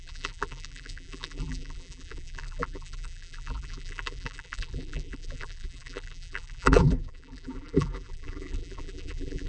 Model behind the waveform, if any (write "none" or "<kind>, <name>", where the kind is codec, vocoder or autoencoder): vocoder, BigVGAN v2